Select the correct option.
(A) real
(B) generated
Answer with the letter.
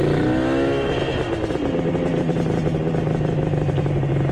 A